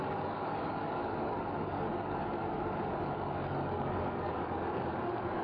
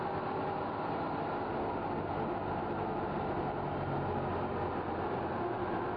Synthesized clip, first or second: first